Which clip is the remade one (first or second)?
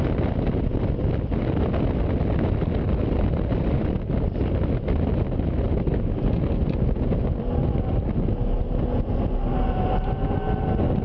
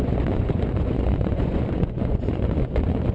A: second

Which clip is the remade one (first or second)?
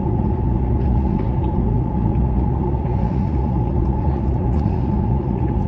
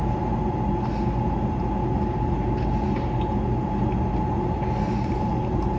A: first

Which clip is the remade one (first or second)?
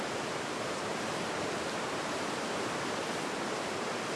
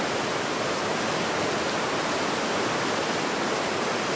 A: first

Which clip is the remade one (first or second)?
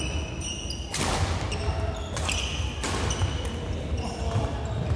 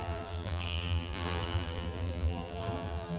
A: second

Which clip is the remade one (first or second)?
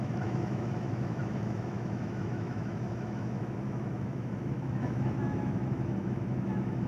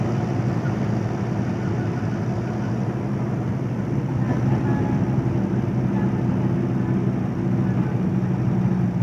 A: first